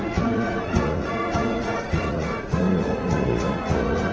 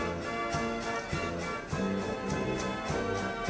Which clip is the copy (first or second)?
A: first